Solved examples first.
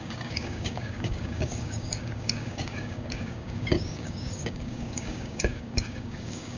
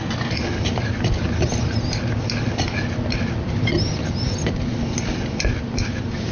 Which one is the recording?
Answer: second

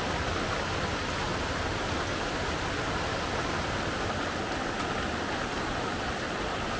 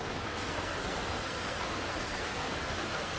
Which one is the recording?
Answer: first